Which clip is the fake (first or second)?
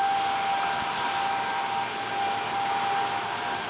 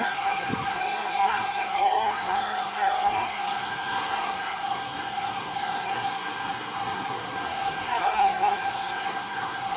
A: second